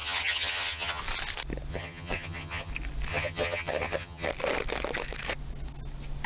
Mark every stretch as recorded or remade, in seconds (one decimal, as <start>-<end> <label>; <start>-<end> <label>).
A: 0.0-1.0 remade; 1.0-1.7 recorded; 1.7-2.7 remade; 2.7-3.1 recorded; 3.1-4.3 remade; 4.3-6.3 recorded